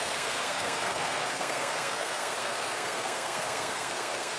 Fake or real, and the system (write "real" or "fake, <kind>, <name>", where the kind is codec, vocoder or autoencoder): fake, codec, SNAC